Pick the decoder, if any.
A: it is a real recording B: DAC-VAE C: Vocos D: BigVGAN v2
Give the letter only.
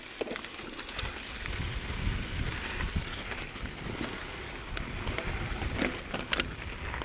A